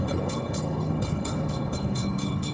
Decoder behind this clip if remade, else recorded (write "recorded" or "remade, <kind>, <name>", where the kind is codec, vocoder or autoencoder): remade, codec, HILCodec